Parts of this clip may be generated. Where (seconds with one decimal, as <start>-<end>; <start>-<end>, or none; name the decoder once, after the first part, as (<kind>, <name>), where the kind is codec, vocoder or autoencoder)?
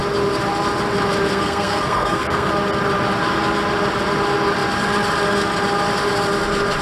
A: 1.3-2.5 (codec, SNAC)